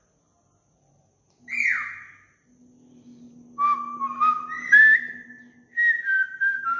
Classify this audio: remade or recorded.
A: recorded